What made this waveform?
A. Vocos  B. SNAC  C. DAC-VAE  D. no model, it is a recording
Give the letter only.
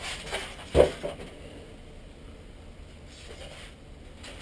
D